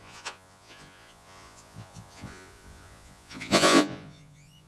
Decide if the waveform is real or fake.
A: fake